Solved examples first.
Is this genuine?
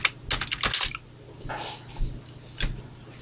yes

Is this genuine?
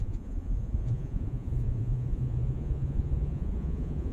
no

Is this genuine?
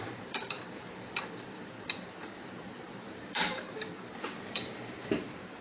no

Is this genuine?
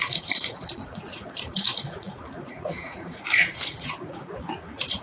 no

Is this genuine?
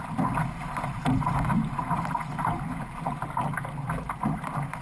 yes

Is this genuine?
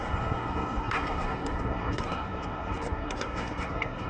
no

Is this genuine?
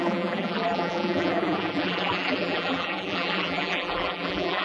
no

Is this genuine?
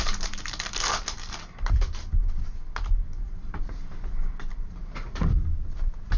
no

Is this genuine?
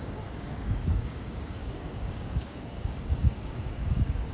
no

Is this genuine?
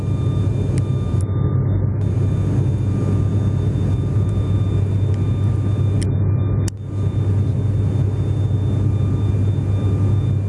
yes